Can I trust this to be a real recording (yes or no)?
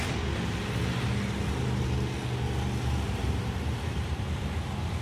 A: yes